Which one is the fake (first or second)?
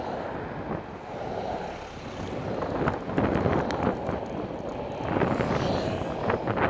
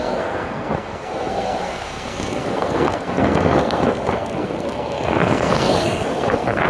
second